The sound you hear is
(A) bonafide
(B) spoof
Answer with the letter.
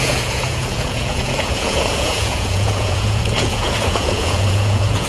B